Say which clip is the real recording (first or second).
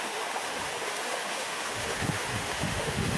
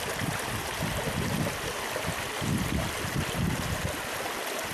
second